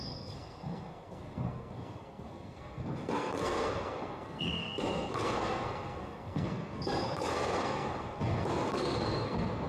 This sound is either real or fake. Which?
fake